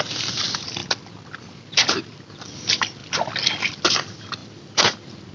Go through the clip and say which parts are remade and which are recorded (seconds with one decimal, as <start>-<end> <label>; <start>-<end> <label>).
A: 0.0-4.4 recorded; 4.4-5.3 remade